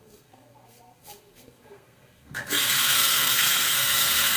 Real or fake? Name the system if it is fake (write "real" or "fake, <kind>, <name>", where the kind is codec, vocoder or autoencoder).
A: fake, codec, SNAC